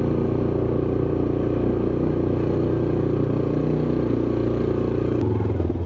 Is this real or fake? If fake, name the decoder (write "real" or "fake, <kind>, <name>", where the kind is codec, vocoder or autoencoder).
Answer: real